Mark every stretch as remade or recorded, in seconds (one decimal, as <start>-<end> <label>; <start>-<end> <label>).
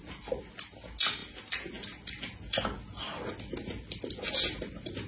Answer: 0.0-5.1 recorded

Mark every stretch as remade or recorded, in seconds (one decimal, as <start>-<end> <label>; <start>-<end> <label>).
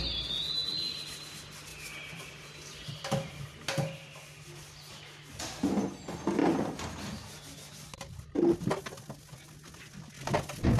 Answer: 0.0-10.8 recorded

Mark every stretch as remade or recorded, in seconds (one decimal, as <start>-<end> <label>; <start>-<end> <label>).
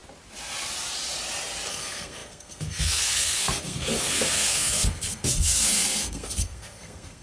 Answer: 0.0-1.7 recorded; 1.7-7.2 remade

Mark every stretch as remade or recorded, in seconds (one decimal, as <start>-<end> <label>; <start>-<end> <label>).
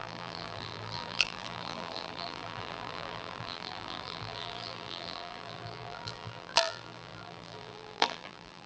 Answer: 0.0-8.7 remade